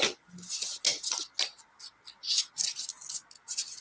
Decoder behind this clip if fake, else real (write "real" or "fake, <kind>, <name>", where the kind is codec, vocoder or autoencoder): real